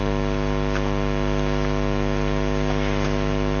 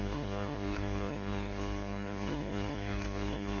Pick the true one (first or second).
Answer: first